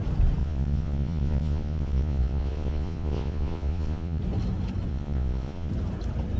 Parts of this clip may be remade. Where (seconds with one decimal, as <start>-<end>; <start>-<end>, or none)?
0.4-4.2; 4.9-5.7